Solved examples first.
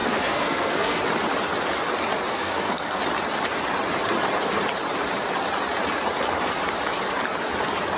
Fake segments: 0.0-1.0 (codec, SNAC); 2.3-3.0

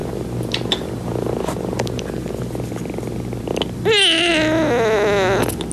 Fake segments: none

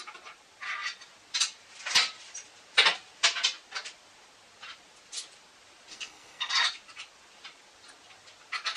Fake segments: 5.9-6.5 (codec, SNAC)